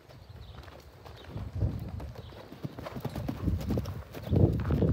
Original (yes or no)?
yes